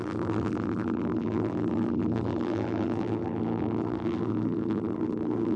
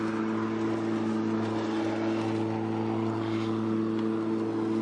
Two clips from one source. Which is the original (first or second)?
second